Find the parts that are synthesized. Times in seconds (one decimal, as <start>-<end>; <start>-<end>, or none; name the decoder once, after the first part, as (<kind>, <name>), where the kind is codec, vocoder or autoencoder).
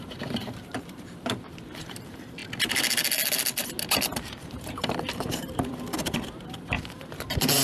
0.0-2.4 (vocoder, BigVGAN v2); 4.1-7.6